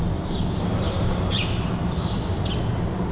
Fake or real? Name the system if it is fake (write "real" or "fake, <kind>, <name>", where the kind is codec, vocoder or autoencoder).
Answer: real